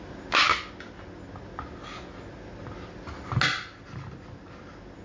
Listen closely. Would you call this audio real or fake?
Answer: real